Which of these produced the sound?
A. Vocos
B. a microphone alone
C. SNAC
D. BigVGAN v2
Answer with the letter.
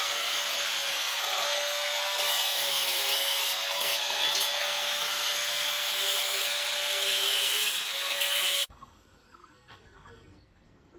C